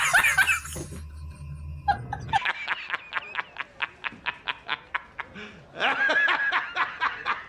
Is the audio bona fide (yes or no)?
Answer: yes